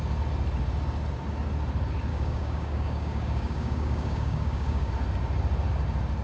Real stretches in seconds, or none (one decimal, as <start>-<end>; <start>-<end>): 0.0-2.1; 4.9-6.2